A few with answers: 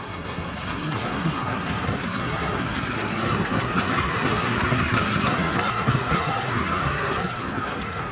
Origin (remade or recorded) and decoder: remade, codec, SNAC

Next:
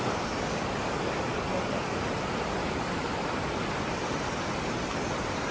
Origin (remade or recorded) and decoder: recorded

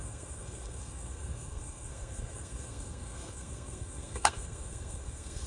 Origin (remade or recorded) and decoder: remade, codec, SNAC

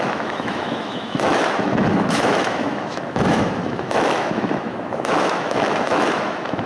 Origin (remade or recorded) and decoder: remade, autoencoder, DAC-VAE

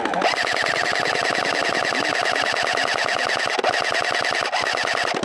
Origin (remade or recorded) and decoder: recorded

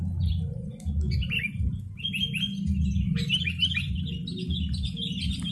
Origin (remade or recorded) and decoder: recorded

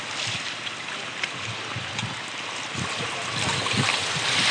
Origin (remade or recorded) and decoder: remade, vocoder, BigVGAN v2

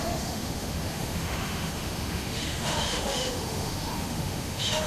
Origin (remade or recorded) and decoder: remade, autoencoder, DAC-VAE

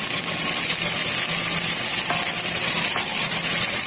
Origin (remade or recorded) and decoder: recorded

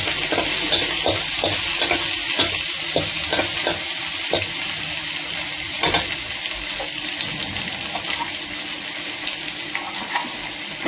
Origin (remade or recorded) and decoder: recorded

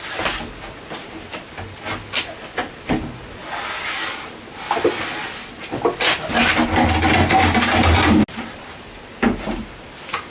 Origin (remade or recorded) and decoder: recorded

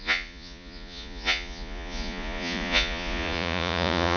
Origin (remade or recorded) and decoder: remade, vocoder, Vocos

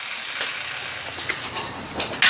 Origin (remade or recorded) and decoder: recorded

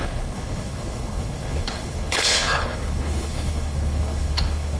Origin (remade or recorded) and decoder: remade, codec, HILCodec